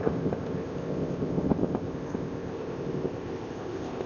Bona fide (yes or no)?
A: no